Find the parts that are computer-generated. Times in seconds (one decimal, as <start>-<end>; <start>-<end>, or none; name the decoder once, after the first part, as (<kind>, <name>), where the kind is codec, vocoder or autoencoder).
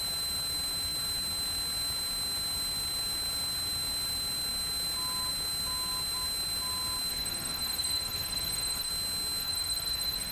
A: 7.1-8.9 (codec, SNAC); 9.4-10.3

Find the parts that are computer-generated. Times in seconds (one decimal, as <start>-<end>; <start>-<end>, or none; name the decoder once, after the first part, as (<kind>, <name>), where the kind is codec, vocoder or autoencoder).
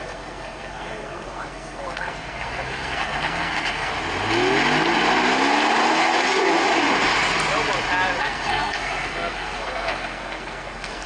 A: 0.0-3.9 (codec, SNAC); 8.2-11.1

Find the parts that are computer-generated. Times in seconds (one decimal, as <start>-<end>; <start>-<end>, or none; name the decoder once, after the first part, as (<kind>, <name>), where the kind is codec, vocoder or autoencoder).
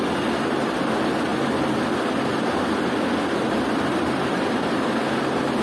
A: none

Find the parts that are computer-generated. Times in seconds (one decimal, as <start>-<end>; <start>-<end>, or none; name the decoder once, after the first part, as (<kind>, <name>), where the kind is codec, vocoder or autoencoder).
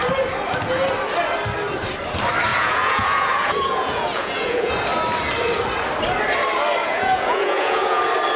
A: 2.5-4.7 (vocoder, Vocos); 6.8-8.0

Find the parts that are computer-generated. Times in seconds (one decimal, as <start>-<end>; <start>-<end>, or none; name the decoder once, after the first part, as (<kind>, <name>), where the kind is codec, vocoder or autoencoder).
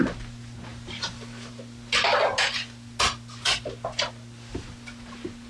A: none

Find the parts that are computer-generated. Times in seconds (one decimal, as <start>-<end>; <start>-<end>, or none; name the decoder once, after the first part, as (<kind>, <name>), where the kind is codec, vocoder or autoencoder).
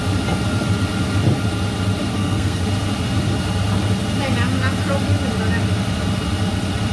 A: 2.1-2.6 (codec, SNAC)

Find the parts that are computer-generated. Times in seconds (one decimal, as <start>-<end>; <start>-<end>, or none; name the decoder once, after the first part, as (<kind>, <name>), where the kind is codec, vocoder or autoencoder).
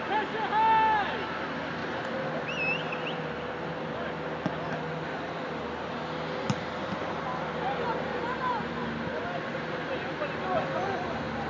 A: 7.9-8.8 (vocoder, BigVGAN v2)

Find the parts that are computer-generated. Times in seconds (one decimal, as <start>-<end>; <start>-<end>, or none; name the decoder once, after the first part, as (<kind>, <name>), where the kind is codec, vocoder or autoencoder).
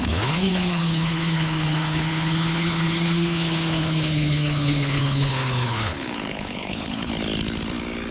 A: 0.0-7.1 (codec, HILCodec)